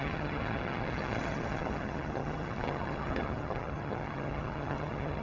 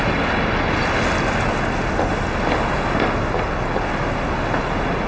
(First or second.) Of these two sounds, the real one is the second